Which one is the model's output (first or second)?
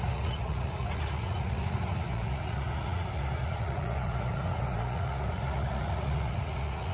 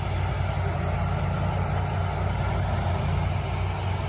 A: first